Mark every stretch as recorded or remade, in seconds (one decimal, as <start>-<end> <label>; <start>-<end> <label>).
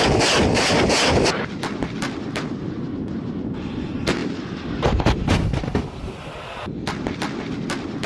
0.0-4.2 recorded; 4.2-7.4 remade; 7.4-8.1 recorded